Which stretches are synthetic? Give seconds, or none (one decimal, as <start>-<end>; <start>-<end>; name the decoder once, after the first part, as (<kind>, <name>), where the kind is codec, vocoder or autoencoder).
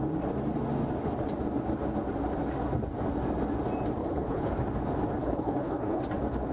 4.0-4.5 (codec, HILCodec); 5.2-6.0